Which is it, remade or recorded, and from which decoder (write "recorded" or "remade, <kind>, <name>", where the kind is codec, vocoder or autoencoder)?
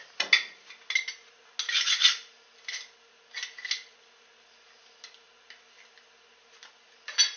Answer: recorded